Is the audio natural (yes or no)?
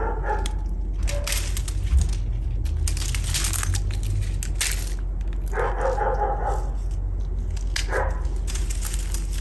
yes